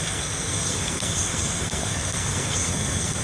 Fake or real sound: fake